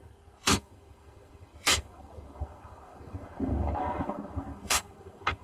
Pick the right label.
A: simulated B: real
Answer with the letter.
A